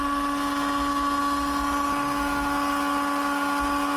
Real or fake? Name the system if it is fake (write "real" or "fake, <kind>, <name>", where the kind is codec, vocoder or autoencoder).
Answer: real